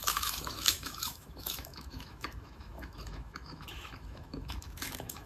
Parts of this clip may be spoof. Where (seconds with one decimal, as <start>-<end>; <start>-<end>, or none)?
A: 0.0-5.3